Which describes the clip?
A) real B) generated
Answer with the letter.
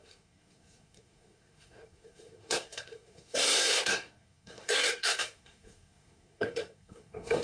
B